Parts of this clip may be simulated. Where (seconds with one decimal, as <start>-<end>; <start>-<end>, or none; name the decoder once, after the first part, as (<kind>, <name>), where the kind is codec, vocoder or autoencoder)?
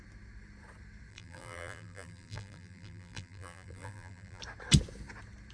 1.1-4.4 (vocoder, BigVGAN v2)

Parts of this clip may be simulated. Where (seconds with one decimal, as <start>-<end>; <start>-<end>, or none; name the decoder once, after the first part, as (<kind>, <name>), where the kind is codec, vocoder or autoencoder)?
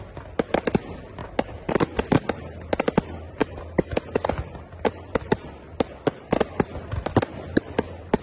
1.2-1.7 (vocoder, BigVGAN v2); 3.4-8.2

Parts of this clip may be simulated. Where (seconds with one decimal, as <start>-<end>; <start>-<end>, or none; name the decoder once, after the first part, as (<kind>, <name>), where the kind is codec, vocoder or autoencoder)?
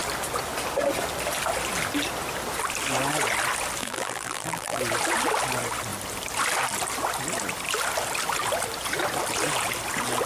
3.8-4.8 (vocoder, BigVGAN v2)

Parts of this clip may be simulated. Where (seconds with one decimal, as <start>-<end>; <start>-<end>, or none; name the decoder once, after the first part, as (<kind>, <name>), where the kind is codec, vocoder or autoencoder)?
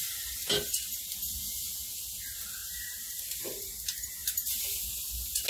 2.6-3.7 (vocoder, BigVGAN v2); 4.2-5.1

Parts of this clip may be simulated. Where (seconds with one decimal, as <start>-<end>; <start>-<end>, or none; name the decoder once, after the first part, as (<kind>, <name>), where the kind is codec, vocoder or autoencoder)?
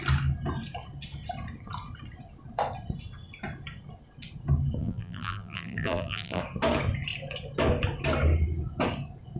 4.8-6.4 (vocoder, BigVGAN v2)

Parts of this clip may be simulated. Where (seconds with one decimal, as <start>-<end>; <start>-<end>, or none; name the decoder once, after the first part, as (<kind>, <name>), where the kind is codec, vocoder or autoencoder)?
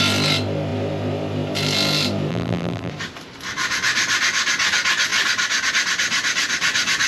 2.3-2.9 (vocoder, BigVGAN v2)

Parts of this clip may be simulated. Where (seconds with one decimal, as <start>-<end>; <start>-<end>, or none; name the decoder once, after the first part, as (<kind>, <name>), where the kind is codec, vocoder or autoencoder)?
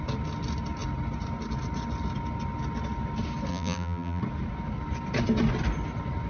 3.5-4.2 (vocoder, BigVGAN v2)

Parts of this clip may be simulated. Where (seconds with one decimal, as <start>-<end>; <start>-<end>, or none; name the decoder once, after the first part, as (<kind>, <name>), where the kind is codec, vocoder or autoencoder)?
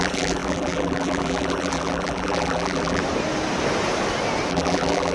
0.0-3.0 (vocoder, BigVGAN v2); 4.5-5.1